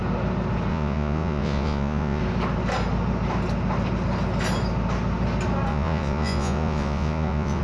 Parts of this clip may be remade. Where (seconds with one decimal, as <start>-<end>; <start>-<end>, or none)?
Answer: 0.7-2.2; 5.7-7.6

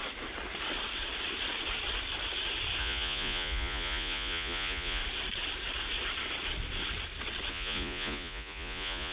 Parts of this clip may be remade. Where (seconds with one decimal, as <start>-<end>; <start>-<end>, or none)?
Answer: 2.8-5.0; 7.5-9.1

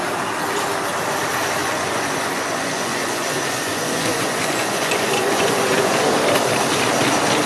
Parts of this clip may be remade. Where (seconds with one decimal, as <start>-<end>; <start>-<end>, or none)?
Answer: 1.6-6.1

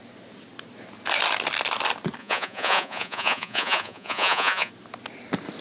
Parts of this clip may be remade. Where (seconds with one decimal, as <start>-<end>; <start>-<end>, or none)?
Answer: 2.2-4.7

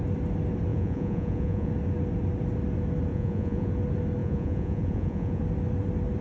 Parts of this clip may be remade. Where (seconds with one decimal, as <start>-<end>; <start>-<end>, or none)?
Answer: 0.7-1.7; 3.1-3.7; 4.2-5.4

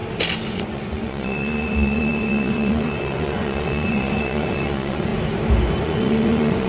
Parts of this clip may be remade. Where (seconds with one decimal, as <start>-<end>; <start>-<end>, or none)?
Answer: 0.5-5.1; 5.8-6.7

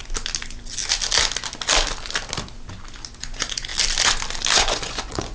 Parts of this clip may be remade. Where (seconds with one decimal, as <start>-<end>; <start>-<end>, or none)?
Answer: 3.2-3.7; 4.6-5.3